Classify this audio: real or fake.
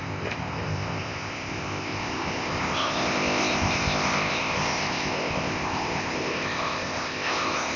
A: fake